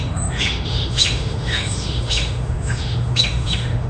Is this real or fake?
fake